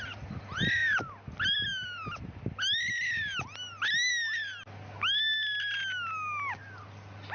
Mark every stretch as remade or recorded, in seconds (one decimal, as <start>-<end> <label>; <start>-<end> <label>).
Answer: 0.0-7.3 recorded